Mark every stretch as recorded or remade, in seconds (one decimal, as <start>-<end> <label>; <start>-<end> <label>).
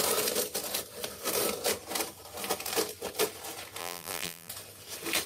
0.0-3.8 recorded; 3.8-4.5 remade; 4.5-5.3 recorded